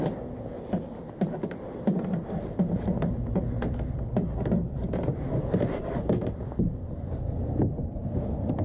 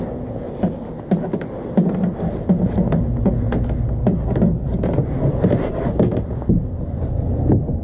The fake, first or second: first